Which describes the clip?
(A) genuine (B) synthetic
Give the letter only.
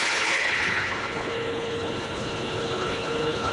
B